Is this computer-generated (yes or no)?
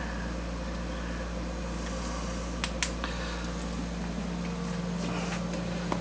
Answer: no